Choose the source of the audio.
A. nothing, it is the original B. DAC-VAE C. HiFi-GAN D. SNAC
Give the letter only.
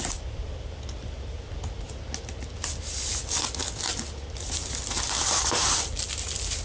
A